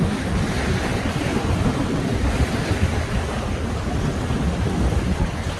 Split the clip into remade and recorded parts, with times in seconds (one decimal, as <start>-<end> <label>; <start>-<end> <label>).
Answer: 0.0-0.9 recorded; 0.9-4.1 remade; 4.1-5.6 recorded